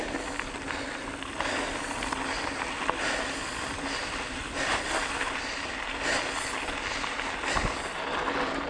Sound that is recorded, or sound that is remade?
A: recorded